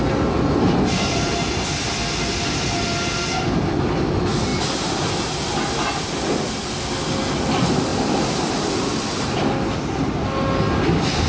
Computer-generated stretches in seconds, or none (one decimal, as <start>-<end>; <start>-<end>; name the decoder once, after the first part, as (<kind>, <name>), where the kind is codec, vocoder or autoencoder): none